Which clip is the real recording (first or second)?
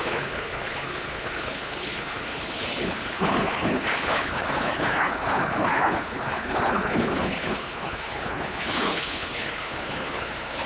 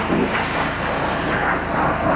second